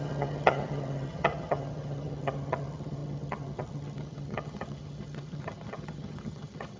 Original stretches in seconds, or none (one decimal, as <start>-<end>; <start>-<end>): none